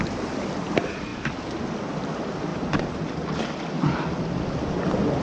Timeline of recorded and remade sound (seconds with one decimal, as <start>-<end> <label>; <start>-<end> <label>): 0.0-2.5 remade; 2.5-5.2 recorded

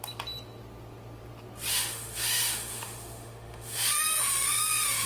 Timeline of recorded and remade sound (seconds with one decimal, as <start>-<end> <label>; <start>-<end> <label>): 0.0-1.7 recorded; 1.7-5.1 remade

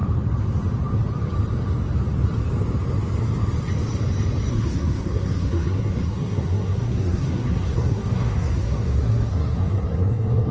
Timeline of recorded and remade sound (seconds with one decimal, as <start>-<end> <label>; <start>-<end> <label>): 0.0-4.5 recorded; 4.5-10.5 remade